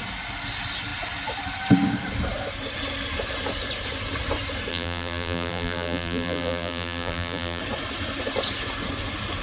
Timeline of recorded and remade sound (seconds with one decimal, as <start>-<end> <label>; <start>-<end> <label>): 0.0-4.7 recorded; 4.7-7.6 remade; 7.6-9.4 recorded